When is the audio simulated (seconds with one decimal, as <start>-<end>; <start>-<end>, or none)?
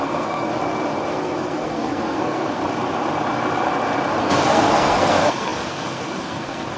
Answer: 0.0-0.5; 1.1-2.6; 4.2-6.8